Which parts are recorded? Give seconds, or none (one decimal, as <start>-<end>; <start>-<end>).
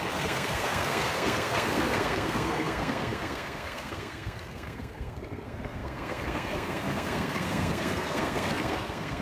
none